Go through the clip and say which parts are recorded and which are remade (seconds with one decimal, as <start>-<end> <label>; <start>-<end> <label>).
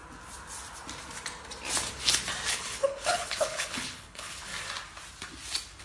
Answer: 0.0-2.5 recorded; 2.5-4.5 remade; 4.5-5.8 recorded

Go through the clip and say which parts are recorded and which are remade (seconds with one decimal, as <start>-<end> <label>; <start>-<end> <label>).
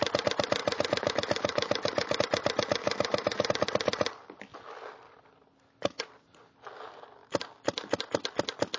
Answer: 0.0-0.6 recorded; 0.6-2.2 remade; 2.2-2.8 recorded; 2.8-3.5 remade; 3.5-8.8 recorded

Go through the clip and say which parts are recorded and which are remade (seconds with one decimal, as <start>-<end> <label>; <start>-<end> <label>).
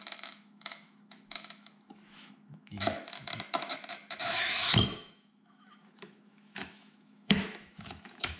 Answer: 0.0-8.4 remade